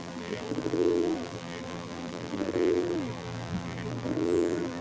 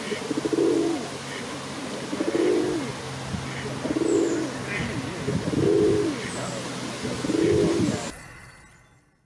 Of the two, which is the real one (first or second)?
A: second